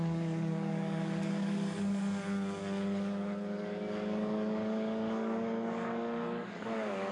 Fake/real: fake